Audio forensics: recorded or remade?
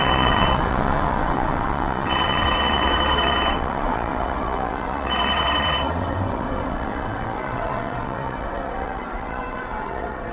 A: remade